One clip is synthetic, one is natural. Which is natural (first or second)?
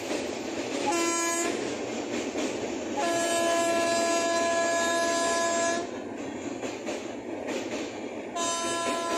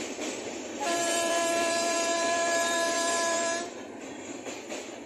first